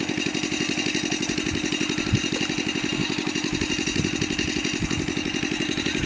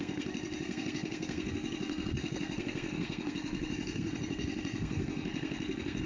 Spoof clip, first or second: second